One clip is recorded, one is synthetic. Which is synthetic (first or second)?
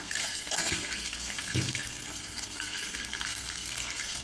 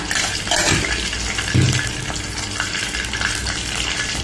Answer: first